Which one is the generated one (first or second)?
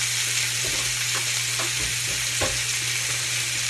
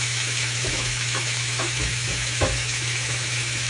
second